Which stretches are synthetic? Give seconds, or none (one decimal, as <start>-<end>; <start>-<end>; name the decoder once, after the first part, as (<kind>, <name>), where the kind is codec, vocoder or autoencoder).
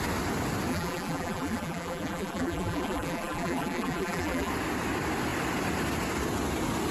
0.7-4.5 (vocoder, BigVGAN v2)